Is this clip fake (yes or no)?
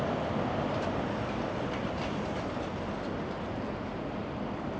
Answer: no